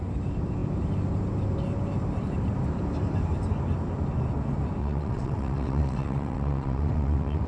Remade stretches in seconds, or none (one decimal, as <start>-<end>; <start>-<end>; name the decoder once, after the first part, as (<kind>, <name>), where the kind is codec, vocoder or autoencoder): 4.8-7.5 (vocoder, WaveNeXt)